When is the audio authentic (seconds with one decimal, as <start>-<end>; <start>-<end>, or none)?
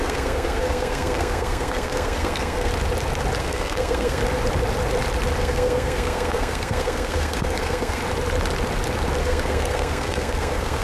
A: 2.7-3.4; 4.2-5.4; 8.0-9.2